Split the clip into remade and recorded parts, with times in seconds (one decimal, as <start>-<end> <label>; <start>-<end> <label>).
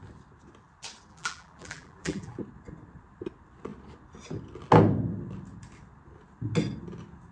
0.0-1.1 recorded; 1.1-2.4 remade; 2.4-7.3 recorded